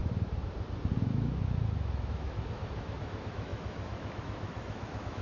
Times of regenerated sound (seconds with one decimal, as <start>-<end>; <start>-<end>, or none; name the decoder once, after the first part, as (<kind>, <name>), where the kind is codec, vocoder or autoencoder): 1.1-5.2 (autoencoder, DAC-VAE)